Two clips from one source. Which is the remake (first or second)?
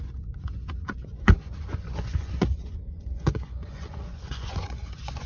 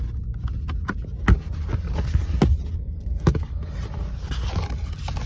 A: first